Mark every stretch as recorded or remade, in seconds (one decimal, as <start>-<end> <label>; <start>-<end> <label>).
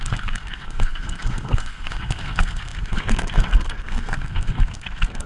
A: 0.0-5.3 remade